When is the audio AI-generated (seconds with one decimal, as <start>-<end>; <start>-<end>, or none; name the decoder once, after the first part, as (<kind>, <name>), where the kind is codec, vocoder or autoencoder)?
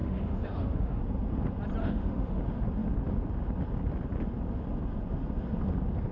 0.0-1.0 (autoencoder, DAC-VAE); 1.8-2.4